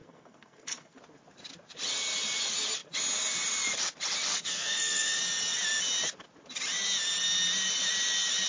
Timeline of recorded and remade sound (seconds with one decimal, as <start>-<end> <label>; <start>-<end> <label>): 0.0-1.0 remade; 1.0-4.3 recorded; 4.3-5.2 remade; 5.2-8.5 recorded